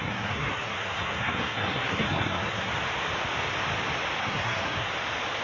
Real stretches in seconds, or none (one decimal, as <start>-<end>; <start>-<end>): 2.7-4.2; 4.9-5.4